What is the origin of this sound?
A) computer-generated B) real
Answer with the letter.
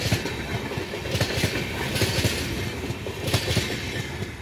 B